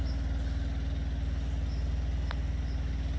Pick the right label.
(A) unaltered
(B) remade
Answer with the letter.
A